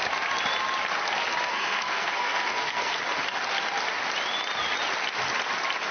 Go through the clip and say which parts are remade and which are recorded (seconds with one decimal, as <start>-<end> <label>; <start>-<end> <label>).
0.0-1.5 recorded; 1.5-3.0 remade; 3.0-5.9 recorded